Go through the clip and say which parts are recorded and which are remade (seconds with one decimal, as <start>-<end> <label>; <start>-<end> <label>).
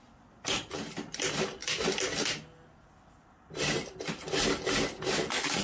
0.0-5.6 recorded